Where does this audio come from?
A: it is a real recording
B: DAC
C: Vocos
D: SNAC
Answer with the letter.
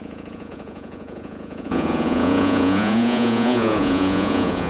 C